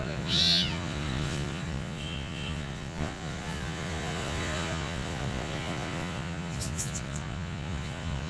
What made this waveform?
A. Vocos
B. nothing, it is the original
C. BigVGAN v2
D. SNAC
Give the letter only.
A